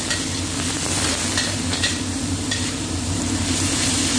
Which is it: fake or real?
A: real